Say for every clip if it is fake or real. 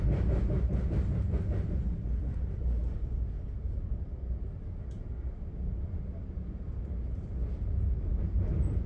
real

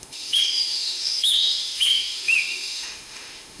fake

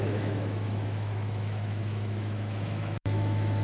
fake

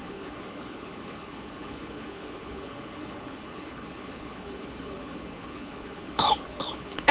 fake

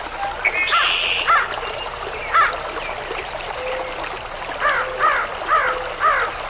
real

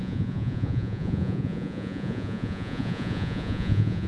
fake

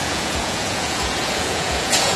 fake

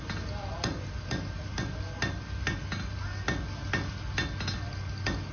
real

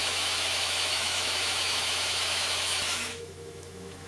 fake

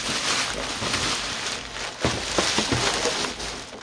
real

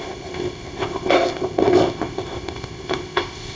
fake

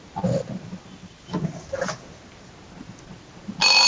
real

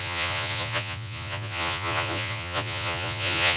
fake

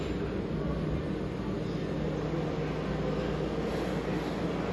real